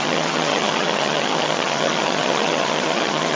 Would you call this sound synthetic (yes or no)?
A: yes